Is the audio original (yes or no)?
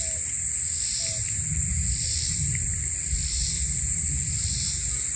yes